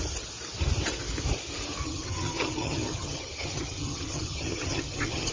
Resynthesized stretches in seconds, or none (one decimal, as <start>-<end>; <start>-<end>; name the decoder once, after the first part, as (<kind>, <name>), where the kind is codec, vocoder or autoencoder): 1.8-5.3 (vocoder, HiFi-GAN)